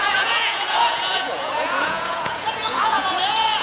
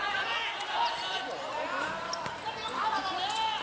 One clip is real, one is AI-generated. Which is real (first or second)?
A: second